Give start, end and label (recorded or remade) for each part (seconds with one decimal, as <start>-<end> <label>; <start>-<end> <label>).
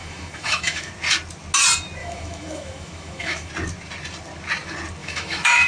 0.0-0.9 remade; 0.9-2.0 recorded; 2.0-3.5 remade; 3.5-5.0 recorded; 5.0-5.7 remade